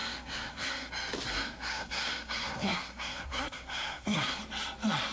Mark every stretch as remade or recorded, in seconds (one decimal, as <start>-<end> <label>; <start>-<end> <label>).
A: 0.0-0.9 remade; 0.9-1.3 recorded; 1.3-4.4 remade; 4.4-5.1 recorded